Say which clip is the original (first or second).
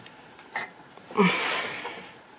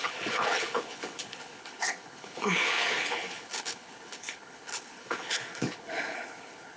first